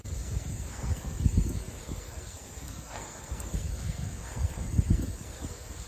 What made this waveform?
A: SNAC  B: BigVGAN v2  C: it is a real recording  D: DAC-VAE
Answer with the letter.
A